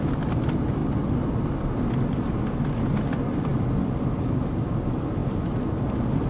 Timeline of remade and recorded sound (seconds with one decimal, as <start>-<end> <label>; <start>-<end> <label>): 0.0-0.8 recorded; 0.8-1.9 remade; 1.9-6.3 recorded